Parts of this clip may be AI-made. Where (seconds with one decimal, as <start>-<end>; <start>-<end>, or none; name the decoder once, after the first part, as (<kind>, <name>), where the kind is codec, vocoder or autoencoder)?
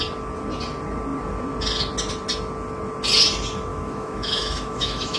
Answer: 3.7-5.2 (autoencoder, DAC-VAE)